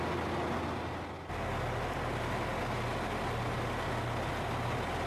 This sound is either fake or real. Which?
real